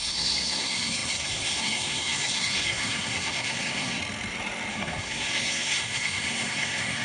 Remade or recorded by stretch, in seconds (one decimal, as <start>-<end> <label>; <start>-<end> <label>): 0.0-4.0 remade; 4.0-4.7 recorded; 4.7-7.0 remade